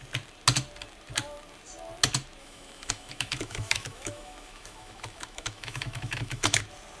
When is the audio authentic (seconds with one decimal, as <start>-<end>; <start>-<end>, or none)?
0.0-2.4; 6.6-7.0